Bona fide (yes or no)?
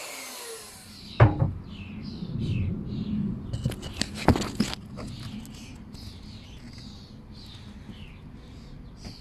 yes